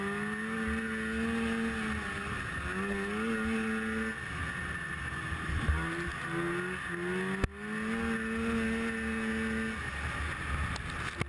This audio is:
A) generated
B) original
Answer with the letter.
B